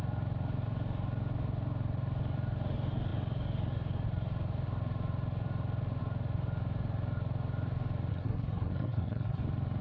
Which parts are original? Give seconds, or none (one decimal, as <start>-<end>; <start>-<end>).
0.0-8.1; 9.4-9.8